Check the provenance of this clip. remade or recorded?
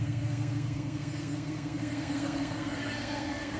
remade